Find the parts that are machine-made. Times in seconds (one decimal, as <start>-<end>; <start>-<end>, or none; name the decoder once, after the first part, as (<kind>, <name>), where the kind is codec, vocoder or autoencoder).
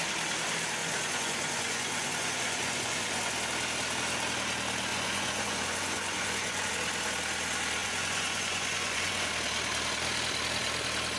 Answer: 0.8-3.3 (vocoder, Vocos); 4.9-6.7; 7.8-9.3